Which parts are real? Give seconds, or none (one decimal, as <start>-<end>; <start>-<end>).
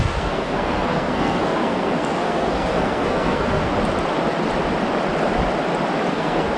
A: 3.7-6.1